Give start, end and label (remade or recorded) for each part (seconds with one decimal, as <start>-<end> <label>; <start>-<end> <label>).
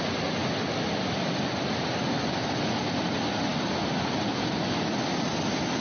0.0-5.8 recorded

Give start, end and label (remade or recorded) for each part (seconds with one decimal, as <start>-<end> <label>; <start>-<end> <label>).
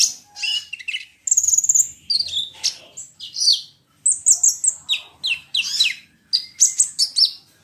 0.0-7.6 recorded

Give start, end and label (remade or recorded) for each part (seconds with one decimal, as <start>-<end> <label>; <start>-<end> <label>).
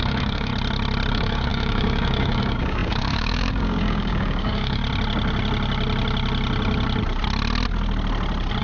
0.0-0.5 remade; 0.5-1.1 recorded; 1.1-4.8 remade; 4.8-8.6 recorded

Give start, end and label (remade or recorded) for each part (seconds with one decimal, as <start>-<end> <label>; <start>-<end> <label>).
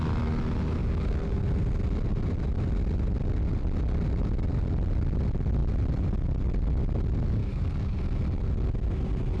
0.0-0.8 recorded; 0.8-1.4 remade; 1.4-7.4 recorded; 7.4-8.0 remade; 8.0-9.4 recorded